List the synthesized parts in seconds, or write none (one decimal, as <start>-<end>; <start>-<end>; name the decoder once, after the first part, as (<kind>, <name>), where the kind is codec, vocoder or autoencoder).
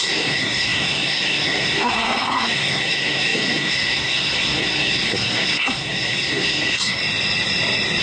0.0-7.0 (codec, SNAC)